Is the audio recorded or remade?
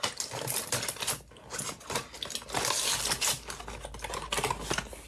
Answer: recorded